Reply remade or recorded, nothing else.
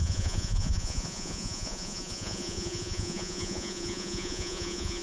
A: remade